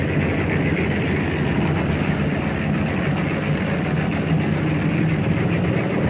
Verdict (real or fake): real